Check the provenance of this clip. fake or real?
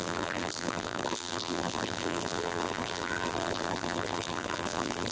fake